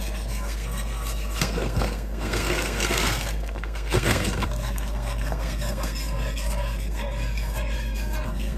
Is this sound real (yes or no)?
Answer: no